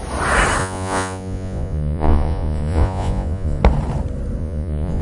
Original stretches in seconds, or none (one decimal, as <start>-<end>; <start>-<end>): 0.0-0.6; 3.6-4.4